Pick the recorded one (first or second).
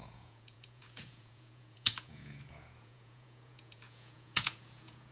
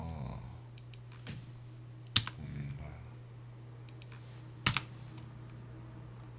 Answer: second